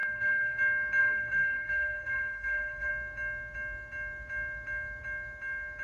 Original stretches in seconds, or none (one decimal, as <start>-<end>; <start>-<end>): 0.6-1.0; 2.9-5.8